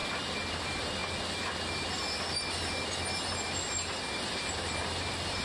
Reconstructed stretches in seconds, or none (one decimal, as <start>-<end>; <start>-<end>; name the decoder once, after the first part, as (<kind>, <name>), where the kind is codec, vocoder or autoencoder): 0.5-1.0 (vocoder, BigVGAN v2); 4.2-5.4